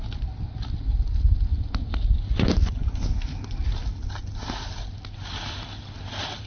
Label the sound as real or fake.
real